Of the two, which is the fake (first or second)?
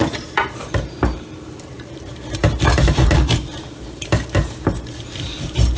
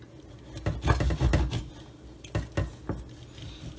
first